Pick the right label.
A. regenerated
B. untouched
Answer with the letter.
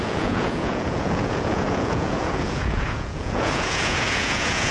A